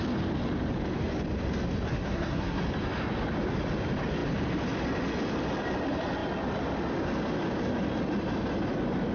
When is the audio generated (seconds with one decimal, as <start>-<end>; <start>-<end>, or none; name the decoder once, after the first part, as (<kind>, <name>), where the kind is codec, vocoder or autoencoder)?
1.9-2.6 (codec, SNAC)